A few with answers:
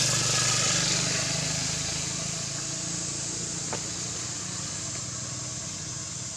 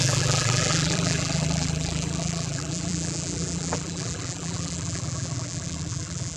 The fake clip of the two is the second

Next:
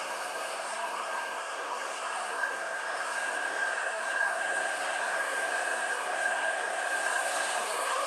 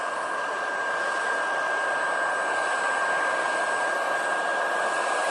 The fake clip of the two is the first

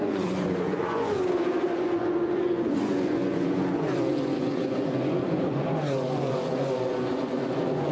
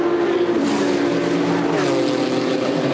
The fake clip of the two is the first